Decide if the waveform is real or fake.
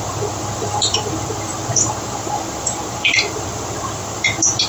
fake